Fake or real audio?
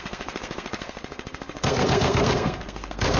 fake